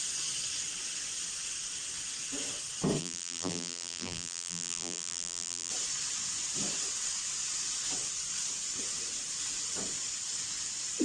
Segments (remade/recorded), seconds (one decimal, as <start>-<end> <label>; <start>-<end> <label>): 0.0-3.0 recorded; 3.0-5.7 remade; 5.7-11.0 recorded